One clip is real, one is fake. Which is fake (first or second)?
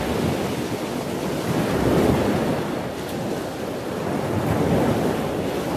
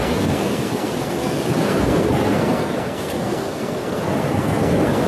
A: second